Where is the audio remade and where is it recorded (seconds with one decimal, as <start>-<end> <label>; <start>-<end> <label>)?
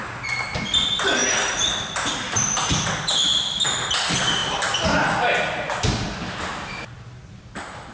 0.0-7.9 recorded